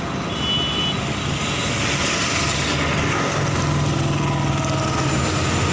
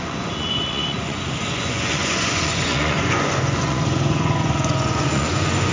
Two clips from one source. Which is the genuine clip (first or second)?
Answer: first